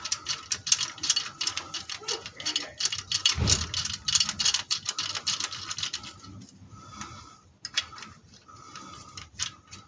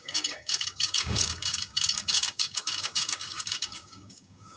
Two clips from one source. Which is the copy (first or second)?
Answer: second